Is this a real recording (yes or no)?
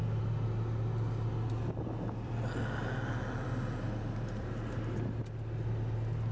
yes